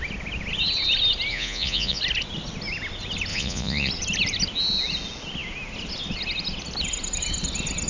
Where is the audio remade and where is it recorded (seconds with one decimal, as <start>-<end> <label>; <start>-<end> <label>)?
0.0-1.3 recorded; 1.3-2.0 remade; 2.0-3.3 recorded; 3.3-3.9 remade; 3.9-7.9 recorded